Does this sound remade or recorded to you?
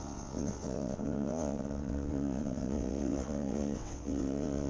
remade